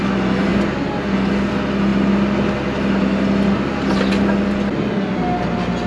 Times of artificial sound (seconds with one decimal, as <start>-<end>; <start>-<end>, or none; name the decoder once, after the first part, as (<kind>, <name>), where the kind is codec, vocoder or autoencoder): none